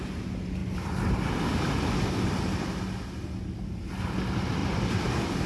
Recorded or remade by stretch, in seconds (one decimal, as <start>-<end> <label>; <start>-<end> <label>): 0.0-4.6 recorded; 4.6-5.5 remade